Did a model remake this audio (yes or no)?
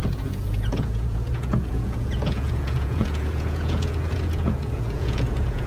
yes